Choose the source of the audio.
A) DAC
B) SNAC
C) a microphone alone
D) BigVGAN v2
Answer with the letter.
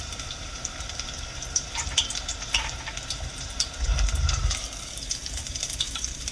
D